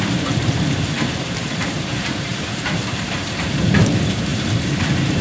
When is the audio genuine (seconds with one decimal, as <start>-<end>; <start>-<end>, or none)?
none